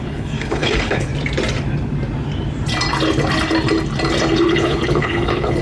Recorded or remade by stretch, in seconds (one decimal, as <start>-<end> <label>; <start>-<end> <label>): 0.0-1.1 remade; 1.1-4.5 recorded; 4.5-5.6 remade

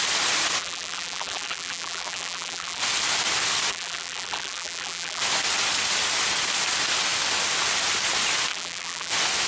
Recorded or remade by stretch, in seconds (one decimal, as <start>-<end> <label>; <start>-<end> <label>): 0.0-0.6 recorded; 0.6-2.8 remade; 2.8-3.7 recorded; 3.7-5.2 remade; 5.2-8.5 recorded; 8.5-9.1 remade; 9.1-9.5 recorded

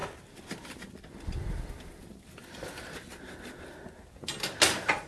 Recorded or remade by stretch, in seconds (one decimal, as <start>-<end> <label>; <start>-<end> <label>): 0.0-5.1 recorded

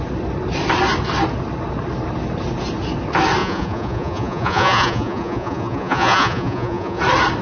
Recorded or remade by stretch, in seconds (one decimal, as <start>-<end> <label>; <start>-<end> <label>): 0.0-3.4 recorded; 3.4-7.0 remade; 7.0-7.4 recorded

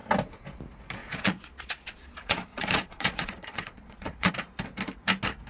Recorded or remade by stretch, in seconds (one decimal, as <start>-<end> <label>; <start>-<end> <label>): 0.0-1.0 recorded; 1.0-4.3 remade; 4.3-5.5 recorded

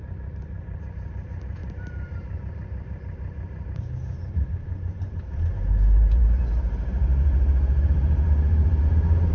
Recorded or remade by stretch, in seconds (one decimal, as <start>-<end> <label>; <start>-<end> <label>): 0.0-9.3 remade

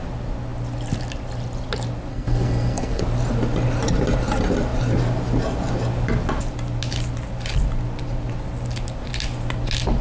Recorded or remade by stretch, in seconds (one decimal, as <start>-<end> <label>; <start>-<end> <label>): 0.0-2.1 recorded; 2.1-3.0 remade; 3.0-10.0 recorded

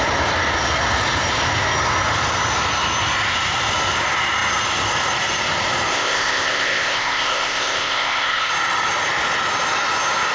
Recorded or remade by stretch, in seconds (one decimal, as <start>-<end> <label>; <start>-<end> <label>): 0.0-5.9 recorded; 5.9-8.5 remade; 8.5-10.3 recorded